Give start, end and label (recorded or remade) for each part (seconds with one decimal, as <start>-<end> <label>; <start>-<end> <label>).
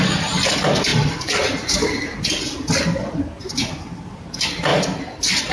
0.0-5.5 recorded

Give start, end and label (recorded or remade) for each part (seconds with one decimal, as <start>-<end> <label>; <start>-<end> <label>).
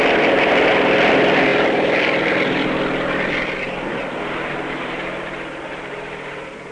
0.0-1.5 recorded; 1.5-5.5 remade; 5.5-6.7 recorded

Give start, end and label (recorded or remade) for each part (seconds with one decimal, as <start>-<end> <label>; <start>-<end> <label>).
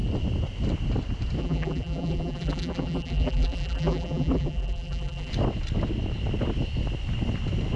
0.0-1.4 recorded; 1.4-5.3 remade; 5.3-7.8 recorded